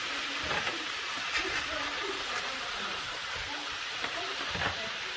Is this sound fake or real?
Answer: fake